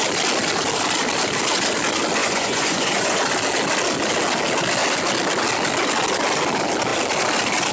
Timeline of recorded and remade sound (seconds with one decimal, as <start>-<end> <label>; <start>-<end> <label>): 0.0-2.2 recorded; 2.2-3.2 remade; 3.2-7.7 recorded